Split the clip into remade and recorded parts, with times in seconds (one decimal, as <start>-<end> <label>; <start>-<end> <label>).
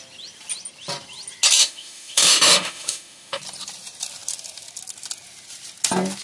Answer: 0.0-1.6 recorded; 1.6-3.4 remade; 3.4-6.2 recorded